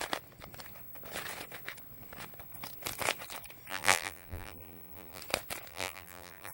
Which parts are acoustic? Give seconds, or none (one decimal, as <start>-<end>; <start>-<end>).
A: 0.0-3.7; 5.2-5.7